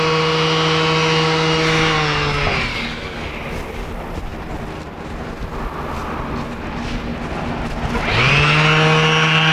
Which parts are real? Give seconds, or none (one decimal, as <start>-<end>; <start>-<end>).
0.0-2.7; 3.3-9.5